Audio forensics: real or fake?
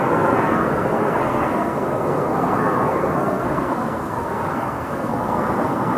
fake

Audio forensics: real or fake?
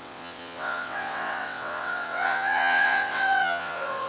fake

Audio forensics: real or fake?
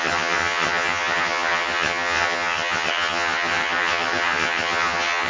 fake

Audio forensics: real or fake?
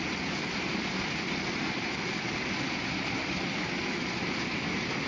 real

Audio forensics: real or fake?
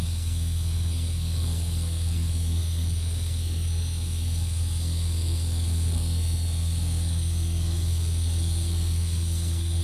fake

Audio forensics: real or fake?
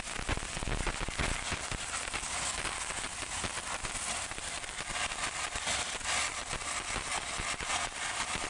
real